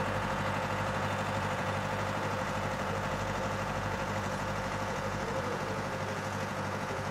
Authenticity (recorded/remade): remade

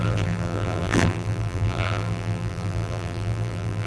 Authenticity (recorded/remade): remade